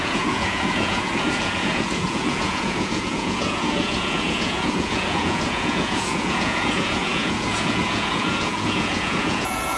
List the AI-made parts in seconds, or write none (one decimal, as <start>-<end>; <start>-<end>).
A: 0.0-9.8